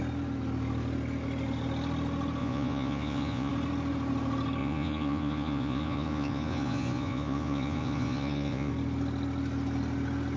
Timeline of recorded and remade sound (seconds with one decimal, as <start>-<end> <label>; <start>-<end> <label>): 0.0-2.4 recorded; 2.4-3.5 remade; 3.5-4.6 recorded; 4.6-8.7 remade; 8.7-10.4 recorded